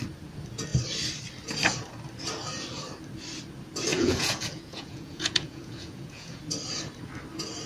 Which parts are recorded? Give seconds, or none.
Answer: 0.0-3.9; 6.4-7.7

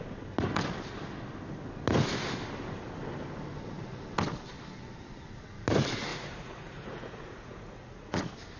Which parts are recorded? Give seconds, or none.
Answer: 0.0-6.1; 8.2-8.6